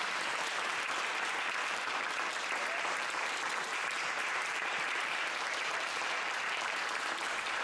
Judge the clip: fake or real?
fake